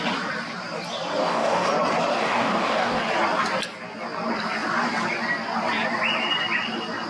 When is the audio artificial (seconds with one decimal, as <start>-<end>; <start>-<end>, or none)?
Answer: 1.2-1.7; 2.1-3.0